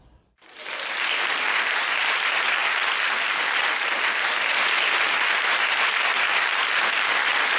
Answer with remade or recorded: remade